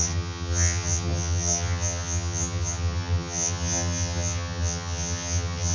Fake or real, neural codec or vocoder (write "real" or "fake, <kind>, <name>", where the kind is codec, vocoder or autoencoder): fake, vocoder, HiFi-GAN